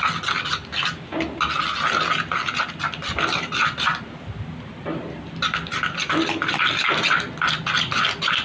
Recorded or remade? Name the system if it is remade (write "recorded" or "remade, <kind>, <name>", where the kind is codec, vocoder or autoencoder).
recorded